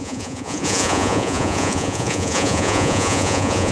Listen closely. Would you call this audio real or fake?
fake